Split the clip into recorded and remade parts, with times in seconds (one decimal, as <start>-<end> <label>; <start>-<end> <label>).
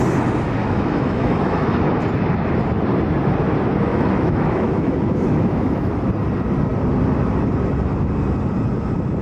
0.0-0.6 recorded; 0.6-1.9 remade; 1.9-3.9 recorded; 3.9-6.1 remade; 6.1-9.2 recorded